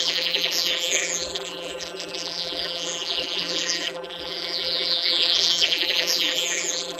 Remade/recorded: remade